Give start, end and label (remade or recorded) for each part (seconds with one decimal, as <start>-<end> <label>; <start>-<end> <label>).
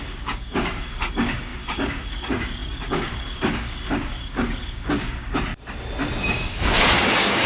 0.0-5.5 remade; 5.5-6.2 recorded; 6.2-7.5 remade